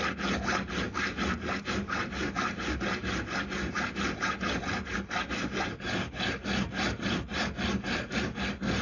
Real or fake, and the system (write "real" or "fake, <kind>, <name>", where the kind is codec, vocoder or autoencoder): real